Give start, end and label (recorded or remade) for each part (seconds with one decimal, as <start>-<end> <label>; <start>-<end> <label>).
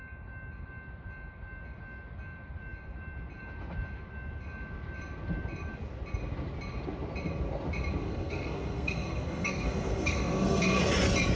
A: 0.0-8.0 recorded; 8.0-10.8 remade; 10.8-11.4 recorded